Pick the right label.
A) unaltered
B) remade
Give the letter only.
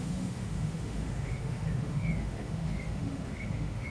B